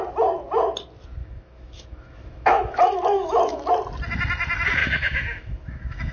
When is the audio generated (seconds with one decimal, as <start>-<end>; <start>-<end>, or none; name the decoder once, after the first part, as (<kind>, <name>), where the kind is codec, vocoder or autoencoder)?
1.2-3.7 (autoencoder, DAC-VAE); 4.8-6.1